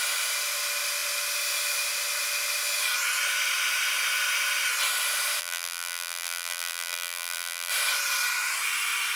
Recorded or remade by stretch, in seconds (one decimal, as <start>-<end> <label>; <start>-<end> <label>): 0.0-5.4 recorded; 5.4-7.7 remade; 7.7-9.2 recorded